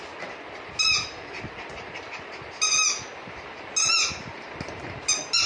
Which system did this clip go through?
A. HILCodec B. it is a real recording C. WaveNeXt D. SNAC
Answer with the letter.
B